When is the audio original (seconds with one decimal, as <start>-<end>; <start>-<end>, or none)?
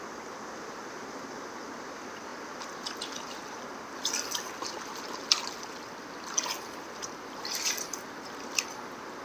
0.0-9.2